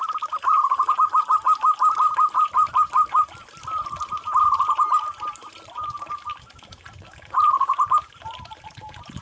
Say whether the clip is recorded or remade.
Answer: recorded